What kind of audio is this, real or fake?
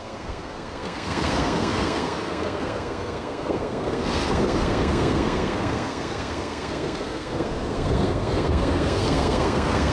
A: fake